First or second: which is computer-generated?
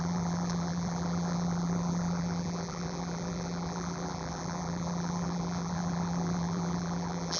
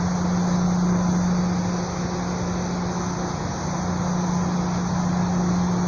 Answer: first